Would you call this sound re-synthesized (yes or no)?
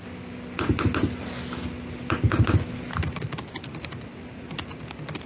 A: no